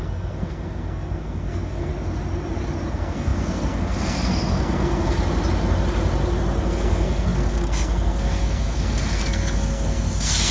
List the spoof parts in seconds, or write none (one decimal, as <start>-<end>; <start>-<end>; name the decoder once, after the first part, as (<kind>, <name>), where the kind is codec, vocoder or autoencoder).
0.0-1.9 (codec, SNAC); 2.9-5.2; 6.6-10.5